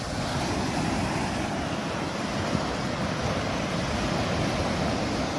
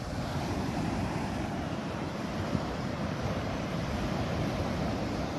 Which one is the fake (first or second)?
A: second